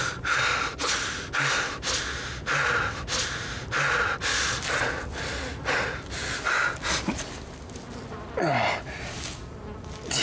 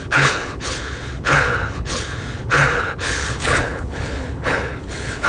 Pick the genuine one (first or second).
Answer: first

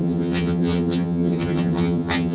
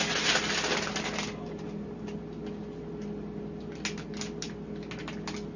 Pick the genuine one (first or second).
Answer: second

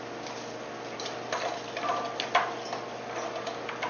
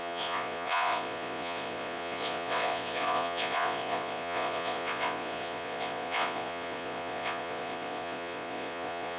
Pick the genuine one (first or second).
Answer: first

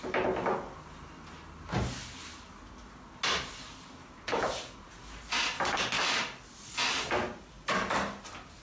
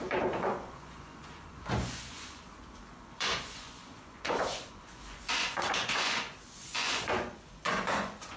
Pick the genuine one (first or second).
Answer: first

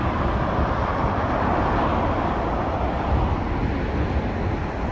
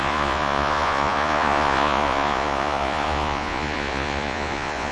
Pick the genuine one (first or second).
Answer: first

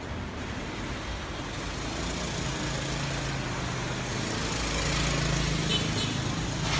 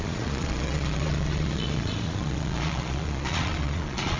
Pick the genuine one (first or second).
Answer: first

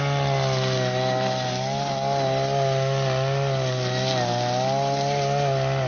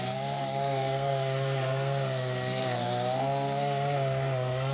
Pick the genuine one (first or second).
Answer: first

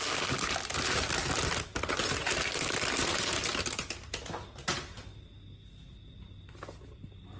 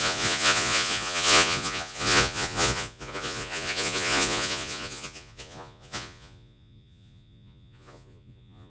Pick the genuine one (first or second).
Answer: first